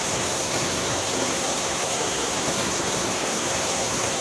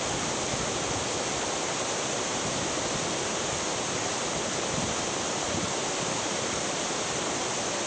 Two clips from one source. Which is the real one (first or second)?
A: second